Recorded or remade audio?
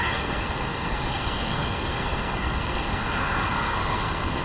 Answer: remade